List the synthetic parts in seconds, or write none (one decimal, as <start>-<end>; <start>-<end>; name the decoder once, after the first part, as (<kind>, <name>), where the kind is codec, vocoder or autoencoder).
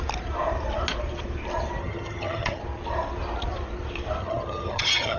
1.8-2.6 (vocoder, HiFi-GAN); 4.2-5.2